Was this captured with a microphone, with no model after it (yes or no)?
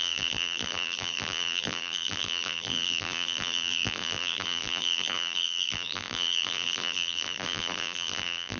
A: no